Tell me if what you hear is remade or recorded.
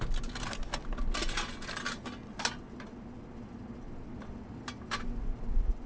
recorded